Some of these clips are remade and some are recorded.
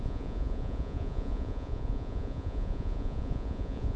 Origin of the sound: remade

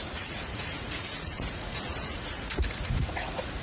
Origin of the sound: remade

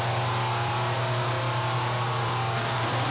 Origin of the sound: recorded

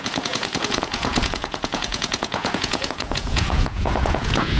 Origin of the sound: remade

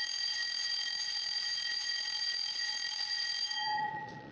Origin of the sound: remade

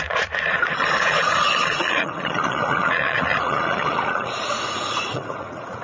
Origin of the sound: remade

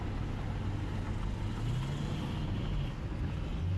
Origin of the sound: recorded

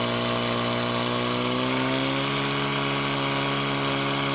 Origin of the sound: recorded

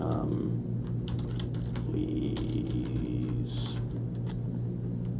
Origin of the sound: recorded